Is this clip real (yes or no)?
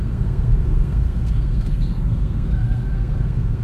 no